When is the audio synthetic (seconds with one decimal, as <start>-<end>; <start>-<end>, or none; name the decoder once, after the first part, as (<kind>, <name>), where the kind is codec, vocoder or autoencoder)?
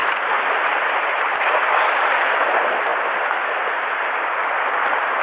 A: none